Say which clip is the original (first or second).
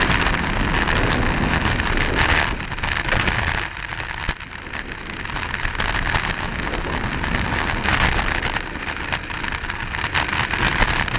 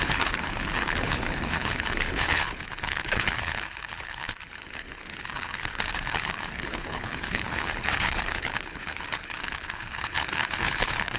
first